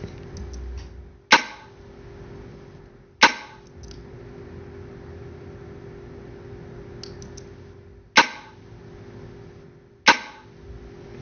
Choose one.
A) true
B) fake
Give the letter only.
A